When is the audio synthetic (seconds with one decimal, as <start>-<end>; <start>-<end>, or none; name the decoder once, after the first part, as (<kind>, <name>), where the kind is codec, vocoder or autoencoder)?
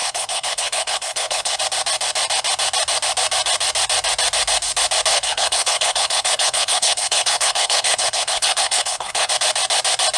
0.0-1.6 (codec, HILCodec); 5.1-9.3